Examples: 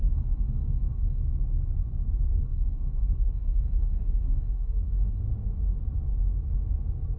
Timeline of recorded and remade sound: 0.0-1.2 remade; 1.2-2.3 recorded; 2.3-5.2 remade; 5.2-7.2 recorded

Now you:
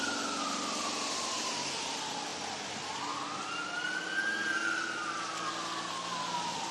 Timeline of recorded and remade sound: 0.0-6.7 recorded